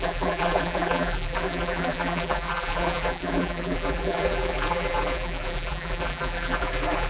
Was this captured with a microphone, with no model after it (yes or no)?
no